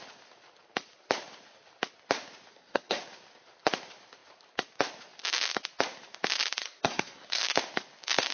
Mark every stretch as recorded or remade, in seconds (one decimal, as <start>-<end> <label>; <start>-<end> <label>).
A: 0.0-2.5 recorded; 2.5-3.0 remade; 3.0-6.6 recorded; 6.6-7.4 remade; 7.4-8.3 recorded